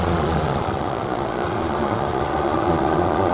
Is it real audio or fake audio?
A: fake